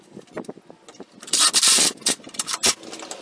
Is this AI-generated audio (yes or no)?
no